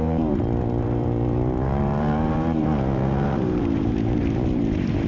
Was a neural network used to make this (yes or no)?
yes